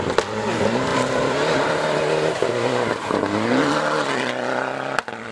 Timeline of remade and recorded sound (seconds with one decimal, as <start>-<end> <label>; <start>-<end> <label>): 0.0-0.9 recorded; 0.9-4.1 remade; 4.1-5.3 recorded